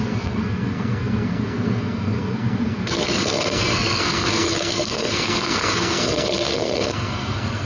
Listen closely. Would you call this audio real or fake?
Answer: fake